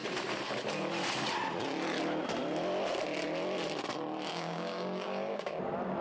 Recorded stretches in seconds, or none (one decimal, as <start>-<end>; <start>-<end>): 0.0-4.3; 5.6-6.0